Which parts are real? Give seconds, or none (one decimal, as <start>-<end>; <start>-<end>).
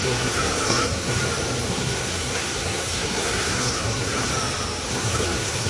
1.2-1.7; 4.3-4.9